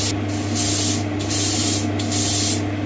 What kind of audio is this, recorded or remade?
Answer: recorded